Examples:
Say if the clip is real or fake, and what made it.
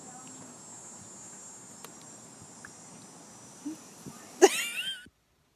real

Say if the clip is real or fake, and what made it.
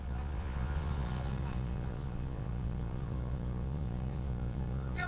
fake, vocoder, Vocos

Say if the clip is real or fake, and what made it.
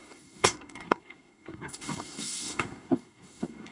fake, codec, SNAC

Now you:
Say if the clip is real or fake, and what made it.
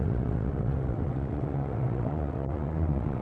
fake, vocoder, WaveNeXt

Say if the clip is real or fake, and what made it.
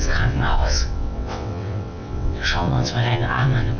fake, vocoder, WaveNeXt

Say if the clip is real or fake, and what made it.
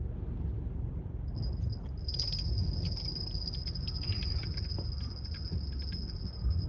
real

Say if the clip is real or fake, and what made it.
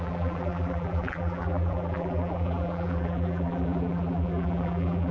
fake, vocoder, BigVGAN v2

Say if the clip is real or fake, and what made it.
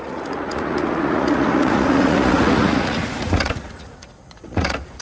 fake, vocoder, Vocos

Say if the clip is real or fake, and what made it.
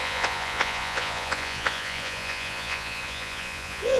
fake, vocoder, Vocos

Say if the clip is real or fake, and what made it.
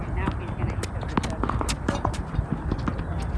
real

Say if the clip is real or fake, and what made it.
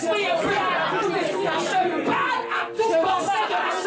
real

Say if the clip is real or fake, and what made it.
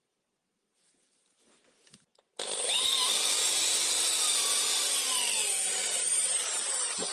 real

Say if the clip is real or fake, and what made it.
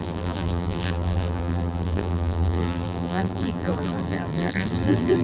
fake, vocoder, BigVGAN v2